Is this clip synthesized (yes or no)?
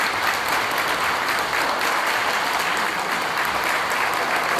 no